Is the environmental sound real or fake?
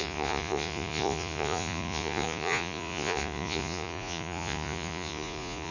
fake